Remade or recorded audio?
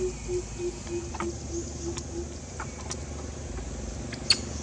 recorded